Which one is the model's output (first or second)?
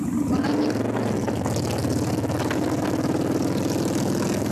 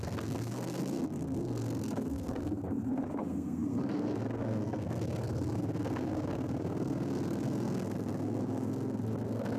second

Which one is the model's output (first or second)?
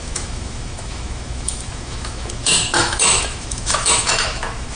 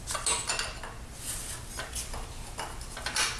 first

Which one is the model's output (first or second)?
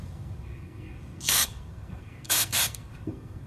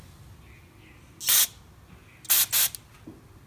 first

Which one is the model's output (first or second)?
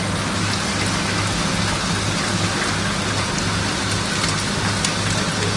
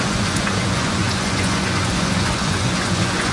second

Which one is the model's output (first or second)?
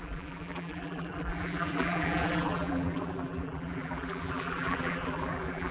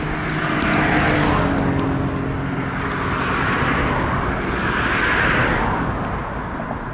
first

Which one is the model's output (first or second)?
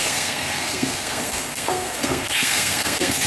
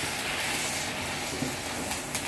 first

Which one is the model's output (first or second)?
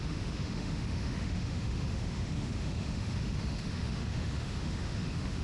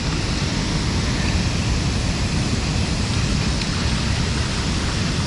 first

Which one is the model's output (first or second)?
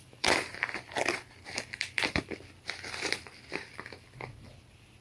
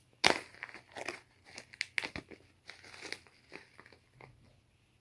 first